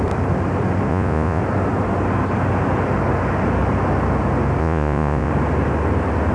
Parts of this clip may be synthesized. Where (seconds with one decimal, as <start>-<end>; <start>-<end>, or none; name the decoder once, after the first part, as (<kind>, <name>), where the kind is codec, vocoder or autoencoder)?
0.9-1.4 (vocoder, Vocos); 4.6-5.3